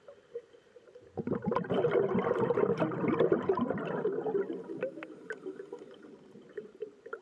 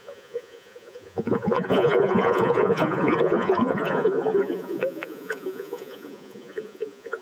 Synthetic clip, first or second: second